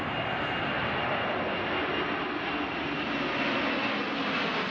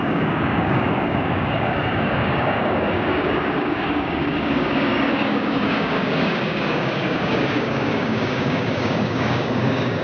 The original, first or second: first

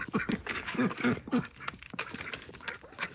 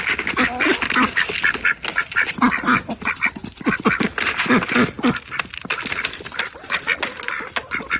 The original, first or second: second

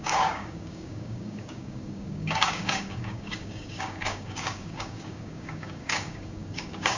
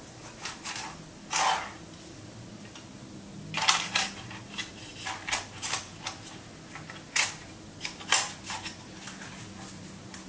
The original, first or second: second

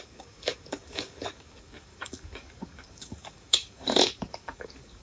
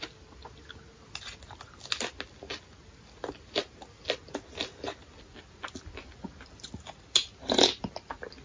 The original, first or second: second